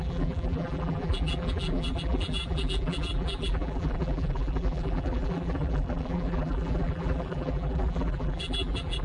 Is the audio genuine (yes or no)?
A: no